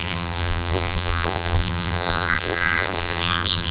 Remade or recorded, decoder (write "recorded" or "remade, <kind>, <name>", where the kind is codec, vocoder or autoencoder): remade, vocoder, BigVGAN v2